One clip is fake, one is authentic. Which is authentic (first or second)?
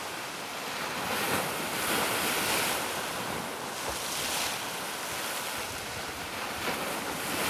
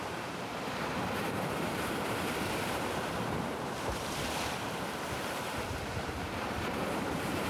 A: first